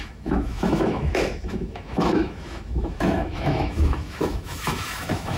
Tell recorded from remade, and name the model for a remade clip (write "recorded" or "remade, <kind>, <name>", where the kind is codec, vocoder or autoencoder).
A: remade, autoencoder, DAC-VAE